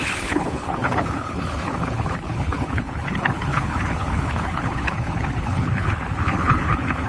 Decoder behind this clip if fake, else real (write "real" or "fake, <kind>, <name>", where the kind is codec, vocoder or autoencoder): fake, codec, HILCodec